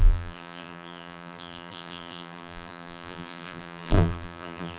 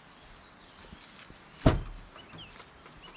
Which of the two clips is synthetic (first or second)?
first